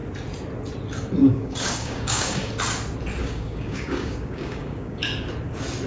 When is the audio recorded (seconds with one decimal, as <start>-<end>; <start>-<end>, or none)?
0.0-1.2; 2.5-3.2; 5.3-5.9